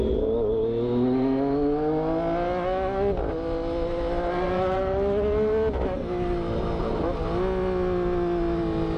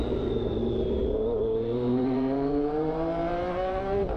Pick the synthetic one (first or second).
second